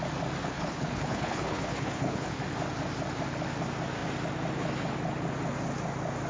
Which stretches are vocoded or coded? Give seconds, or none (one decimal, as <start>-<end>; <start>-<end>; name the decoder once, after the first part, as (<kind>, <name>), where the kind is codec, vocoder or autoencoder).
0.4-2.4 (codec, HILCodec)